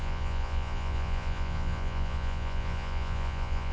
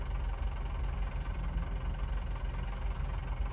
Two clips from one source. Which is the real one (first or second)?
second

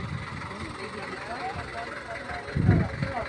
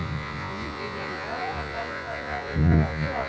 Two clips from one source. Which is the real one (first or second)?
first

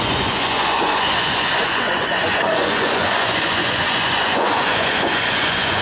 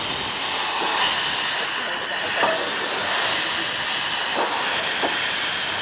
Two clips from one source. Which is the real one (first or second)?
second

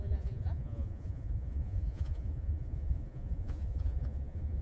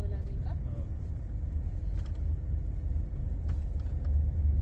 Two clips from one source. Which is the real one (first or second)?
second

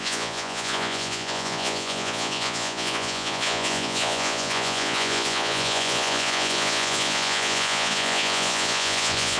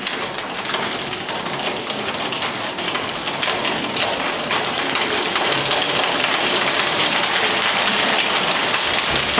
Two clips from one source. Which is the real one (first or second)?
second